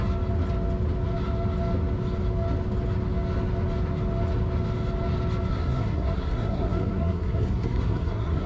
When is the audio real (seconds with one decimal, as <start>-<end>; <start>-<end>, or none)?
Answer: 0.0-5.5